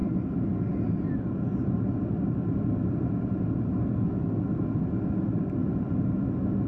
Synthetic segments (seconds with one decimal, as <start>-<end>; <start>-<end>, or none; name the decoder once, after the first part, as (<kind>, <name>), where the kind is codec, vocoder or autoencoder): 3.8-4.4 (codec, SNAC)